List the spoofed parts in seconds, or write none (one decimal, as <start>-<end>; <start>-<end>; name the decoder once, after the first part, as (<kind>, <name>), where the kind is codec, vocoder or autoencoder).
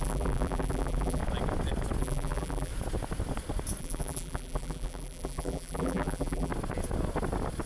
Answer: 0.0-1.2 (vocoder, BigVGAN v2); 2.0-2.7; 3.8-6.5